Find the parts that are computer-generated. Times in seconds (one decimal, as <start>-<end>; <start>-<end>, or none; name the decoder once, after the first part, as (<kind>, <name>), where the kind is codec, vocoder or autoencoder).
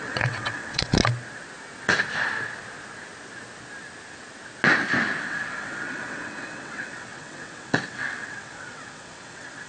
0.0-1.0 (vocoder, WaveNeXt); 5.2-9.7